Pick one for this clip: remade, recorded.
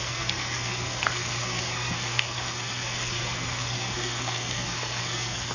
remade